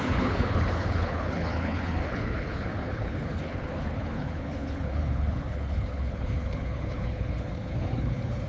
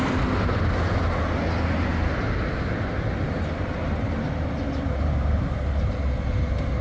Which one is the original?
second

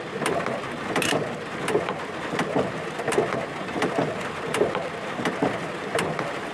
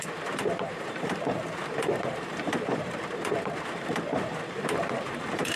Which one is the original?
first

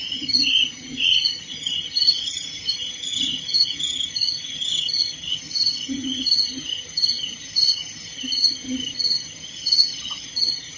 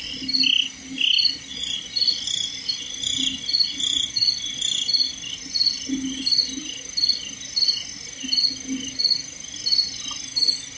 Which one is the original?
second